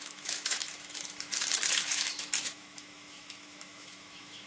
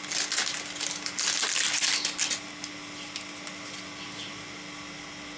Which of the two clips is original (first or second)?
second